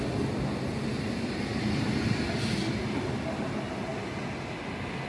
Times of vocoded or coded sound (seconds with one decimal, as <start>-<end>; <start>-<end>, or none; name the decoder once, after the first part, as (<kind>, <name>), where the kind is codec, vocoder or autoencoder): none